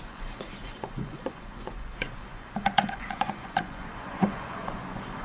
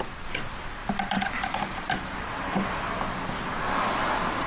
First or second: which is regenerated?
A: first